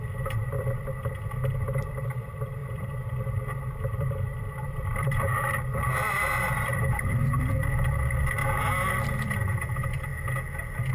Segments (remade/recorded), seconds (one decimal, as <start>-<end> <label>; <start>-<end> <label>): 0.0-8.4 remade; 8.4-9.0 recorded; 9.0-10.1 remade; 10.1-10.9 recorded